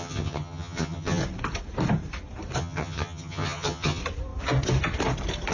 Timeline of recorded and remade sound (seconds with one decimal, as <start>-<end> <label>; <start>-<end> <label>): 0.0-1.2 remade; 1.2-2.6 recorded; 2.6-4.0 remade; 4.0-5.5 recorded